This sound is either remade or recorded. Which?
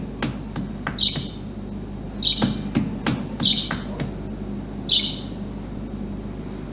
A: recorded